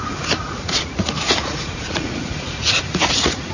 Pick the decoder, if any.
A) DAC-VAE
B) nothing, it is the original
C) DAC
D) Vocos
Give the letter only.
D